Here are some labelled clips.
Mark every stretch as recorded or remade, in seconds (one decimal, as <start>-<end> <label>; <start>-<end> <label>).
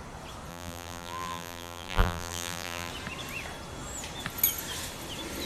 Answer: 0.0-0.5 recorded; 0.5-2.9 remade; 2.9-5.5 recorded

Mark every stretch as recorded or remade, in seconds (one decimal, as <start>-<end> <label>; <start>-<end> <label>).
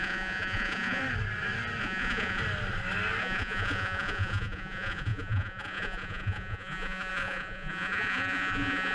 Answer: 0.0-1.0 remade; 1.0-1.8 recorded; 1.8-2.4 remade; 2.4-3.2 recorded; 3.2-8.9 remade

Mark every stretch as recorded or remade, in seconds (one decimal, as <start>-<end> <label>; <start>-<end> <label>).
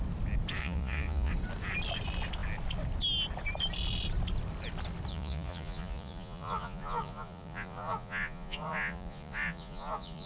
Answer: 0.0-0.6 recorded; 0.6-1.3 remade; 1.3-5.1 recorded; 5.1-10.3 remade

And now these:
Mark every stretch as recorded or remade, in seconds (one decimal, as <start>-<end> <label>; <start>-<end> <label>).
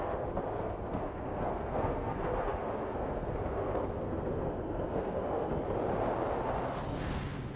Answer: 0.0-5.5 remade; 5.5-7.0 recorded; 7.0-7.6 remade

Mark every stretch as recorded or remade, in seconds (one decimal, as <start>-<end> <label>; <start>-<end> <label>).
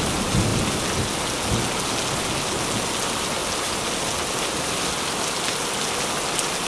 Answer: 0.0-6.7 recorded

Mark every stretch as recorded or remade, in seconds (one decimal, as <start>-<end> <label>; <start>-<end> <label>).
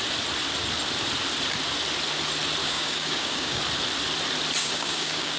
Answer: 0.0-2.6 recorded; 2.6-3.6 remade; 3.6-4.6 recorded; 4.6-5.4 remade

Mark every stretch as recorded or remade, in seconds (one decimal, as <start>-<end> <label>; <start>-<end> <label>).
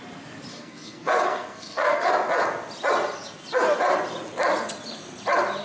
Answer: 0.0-0.5 recorded; 0.5-2.1 remade; 2.1-5.6 recorded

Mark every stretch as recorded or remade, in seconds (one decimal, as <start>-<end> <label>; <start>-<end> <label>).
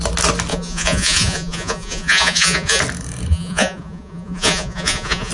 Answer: 0.0-0.5 recorded; 0.5-2.8 remade; 2.8-3.3 recorded; 3.3-5.3 remade